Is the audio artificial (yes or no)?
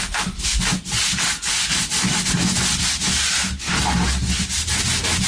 no